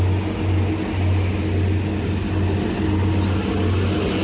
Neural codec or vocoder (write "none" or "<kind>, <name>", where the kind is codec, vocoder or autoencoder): none